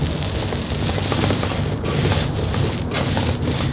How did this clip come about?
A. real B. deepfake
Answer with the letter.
A